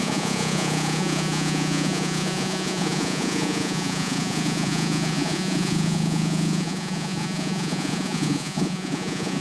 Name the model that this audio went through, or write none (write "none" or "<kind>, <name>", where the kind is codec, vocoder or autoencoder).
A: vocoder, Vocos